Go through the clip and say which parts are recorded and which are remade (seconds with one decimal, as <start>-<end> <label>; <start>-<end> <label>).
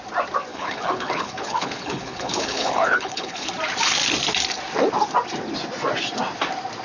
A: 0.0-0.5 recorded; 0.5-3.5 remade; 3.5-6.8 recorded